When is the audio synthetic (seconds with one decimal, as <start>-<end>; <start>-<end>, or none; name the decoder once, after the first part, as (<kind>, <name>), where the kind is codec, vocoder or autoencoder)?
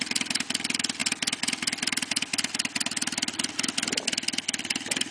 none